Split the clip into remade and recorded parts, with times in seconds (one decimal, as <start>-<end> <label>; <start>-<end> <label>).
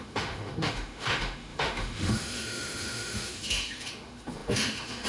0.0-5.1 remade